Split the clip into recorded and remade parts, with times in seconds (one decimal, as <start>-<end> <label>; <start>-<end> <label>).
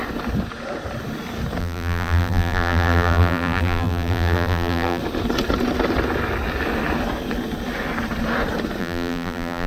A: 0.0-1.6 recorded; 1.6-5.0 remade; 5.0-8.8 recorded; 8.8-9.7 remade